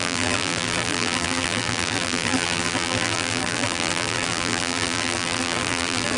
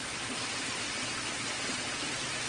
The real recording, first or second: second